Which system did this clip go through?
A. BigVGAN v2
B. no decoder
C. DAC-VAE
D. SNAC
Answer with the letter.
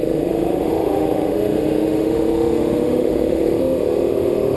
C